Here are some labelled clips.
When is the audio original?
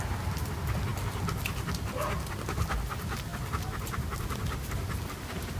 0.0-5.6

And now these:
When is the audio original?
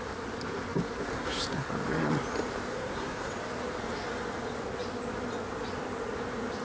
0.0-1.1; 1.7-2.7; 3.3-6.6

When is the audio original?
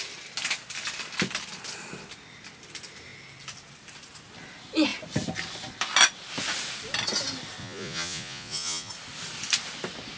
0.0-7.6; 8.9-10.2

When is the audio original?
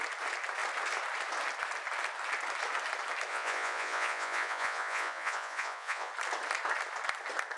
0.0-3.3; 6.1-7.6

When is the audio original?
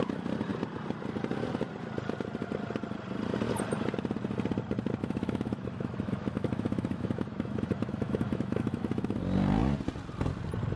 0.0-5.0; 9.2-10.8